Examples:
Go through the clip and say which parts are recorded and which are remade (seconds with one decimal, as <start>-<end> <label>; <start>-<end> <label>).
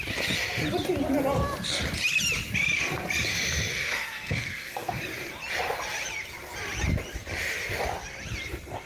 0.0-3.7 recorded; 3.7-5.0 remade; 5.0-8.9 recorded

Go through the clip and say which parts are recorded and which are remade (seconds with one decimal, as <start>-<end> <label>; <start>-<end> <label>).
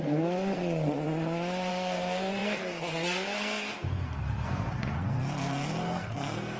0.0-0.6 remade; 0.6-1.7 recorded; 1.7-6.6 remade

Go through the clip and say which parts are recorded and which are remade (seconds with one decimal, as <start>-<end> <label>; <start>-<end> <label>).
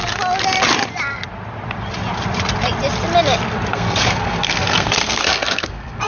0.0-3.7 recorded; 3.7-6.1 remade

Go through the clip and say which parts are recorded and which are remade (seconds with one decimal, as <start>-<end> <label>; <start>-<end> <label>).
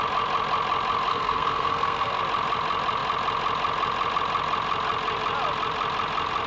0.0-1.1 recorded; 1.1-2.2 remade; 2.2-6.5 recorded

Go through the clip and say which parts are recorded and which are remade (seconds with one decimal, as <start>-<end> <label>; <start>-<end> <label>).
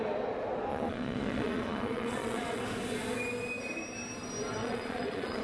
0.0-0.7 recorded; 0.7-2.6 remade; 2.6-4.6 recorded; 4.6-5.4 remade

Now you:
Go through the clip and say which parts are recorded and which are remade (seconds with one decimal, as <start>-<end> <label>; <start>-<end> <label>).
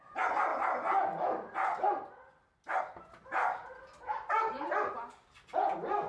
0.0-6.1 recorded